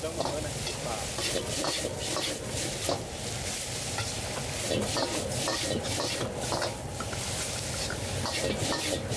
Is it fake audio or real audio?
fake